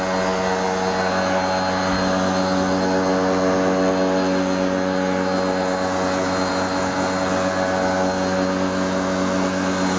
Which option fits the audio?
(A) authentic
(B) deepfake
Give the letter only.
A